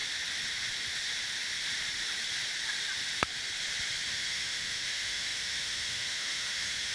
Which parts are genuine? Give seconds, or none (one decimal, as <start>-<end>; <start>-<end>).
0.0-4.1